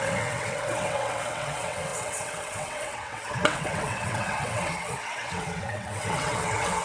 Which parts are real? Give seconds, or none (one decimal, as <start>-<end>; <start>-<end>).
none